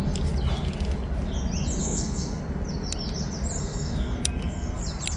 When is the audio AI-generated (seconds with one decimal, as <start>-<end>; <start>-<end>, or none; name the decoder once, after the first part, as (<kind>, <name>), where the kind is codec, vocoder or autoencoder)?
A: 1.8-2.4 (codec, SNAC); 3.6-4.8